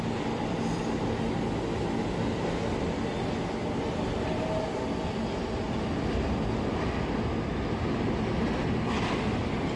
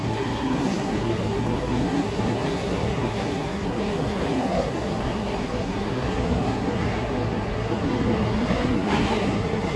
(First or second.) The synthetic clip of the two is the second